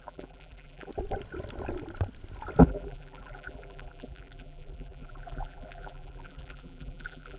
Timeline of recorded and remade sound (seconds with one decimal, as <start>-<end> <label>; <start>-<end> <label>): 0.0-0.9 remade; 0.9-2.6 recorded; 2.6-7.4 remade

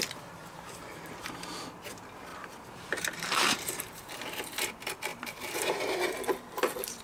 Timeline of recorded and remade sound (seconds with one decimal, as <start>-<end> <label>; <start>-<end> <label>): 0.0-0.4 recorded; 0.4-1.2 remade; 1.2-2.3 recorded; 2.3-4.2 remade; 4.2-5.1 recorded; 5.1-5.8 remade; 5.8-7.0 recorded

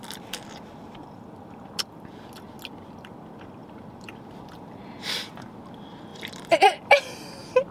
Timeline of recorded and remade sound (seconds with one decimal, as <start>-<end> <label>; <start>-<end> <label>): 0.0-1.7 remade; 1.7-3.6 recorded; 3.6-5.4 remade; 5.4-6.1 recorded; 6.1-7.0 remade; 7.0-7.7 recorded

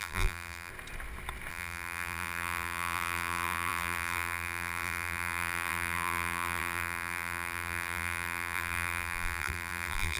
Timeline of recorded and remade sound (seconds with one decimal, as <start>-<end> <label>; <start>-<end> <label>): 0.0-0.7 remade; 0.7-1.5 recorded; 1.5-10.2 remade

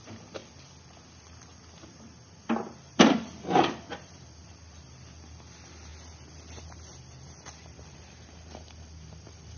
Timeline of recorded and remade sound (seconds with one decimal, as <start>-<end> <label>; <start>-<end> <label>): 0.0-0.4 remade; 0.4-1.6 recorded; 1.6-5.9 remade; 5.9-6.6 recorded; 6.6-9.6 remade